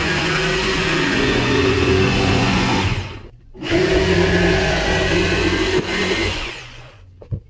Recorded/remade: remade